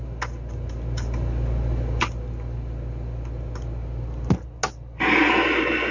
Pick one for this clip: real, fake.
real